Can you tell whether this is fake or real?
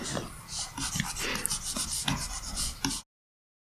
real